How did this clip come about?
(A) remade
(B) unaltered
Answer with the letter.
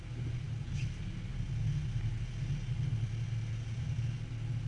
B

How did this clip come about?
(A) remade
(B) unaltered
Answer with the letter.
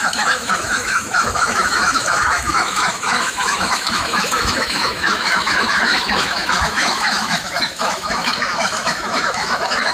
A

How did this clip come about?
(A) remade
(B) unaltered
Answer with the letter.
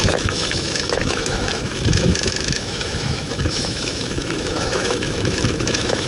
A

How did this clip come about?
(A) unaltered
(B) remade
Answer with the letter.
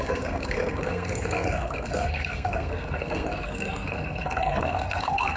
B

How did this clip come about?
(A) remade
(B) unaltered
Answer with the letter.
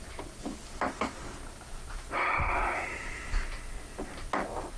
B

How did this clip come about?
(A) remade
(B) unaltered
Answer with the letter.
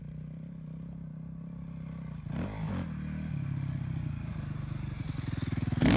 B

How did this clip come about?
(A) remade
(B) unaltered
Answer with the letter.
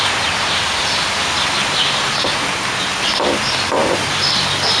B